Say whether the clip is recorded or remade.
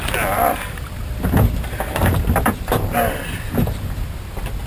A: recorded